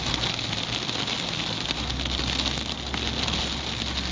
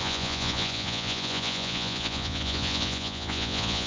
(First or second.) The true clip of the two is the first